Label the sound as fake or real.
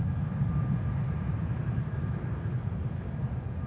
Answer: real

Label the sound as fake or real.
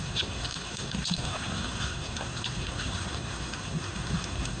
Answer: fake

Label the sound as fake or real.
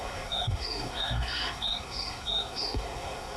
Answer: fake